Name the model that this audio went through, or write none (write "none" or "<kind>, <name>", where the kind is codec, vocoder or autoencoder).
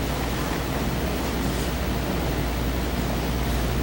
none